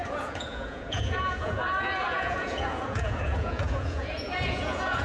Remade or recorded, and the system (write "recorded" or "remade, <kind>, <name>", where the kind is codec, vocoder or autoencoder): remade, vocoder, Vocos